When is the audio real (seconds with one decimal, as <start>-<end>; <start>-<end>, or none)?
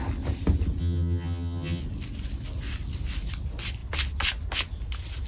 0.0-0.8; 1.8-5.3